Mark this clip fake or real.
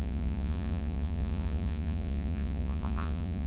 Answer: fake